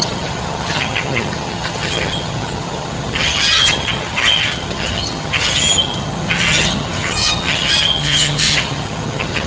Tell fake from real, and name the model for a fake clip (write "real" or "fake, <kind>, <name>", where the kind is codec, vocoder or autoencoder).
fake, vocoder, HiFi-GAN